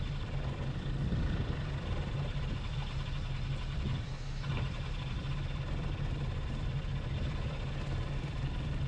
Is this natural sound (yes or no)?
no